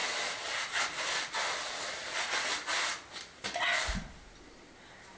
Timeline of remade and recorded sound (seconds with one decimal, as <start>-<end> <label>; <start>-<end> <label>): 0.0-5.2 recorded